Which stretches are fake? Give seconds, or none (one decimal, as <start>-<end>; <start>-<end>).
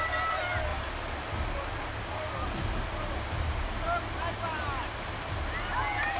none